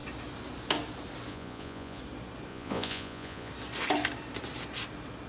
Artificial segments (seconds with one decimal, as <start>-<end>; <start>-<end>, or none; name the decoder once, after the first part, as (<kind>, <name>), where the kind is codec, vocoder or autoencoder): 1.3-2.0 (vocoder, Vocos); 2.5-3.5

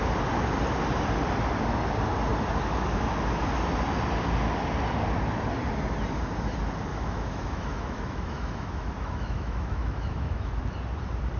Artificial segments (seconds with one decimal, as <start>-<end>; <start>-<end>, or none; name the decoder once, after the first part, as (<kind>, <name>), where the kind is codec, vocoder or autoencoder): 6.9-10.6 (autoencoder, DAC-VAE)

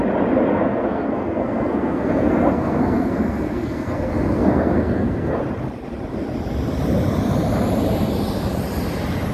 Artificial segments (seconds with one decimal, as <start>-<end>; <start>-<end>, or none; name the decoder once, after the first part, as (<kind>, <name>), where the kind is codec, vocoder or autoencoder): 0.5-5.4 (codec, SNAC)